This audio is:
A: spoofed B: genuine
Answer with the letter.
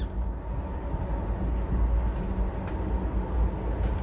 B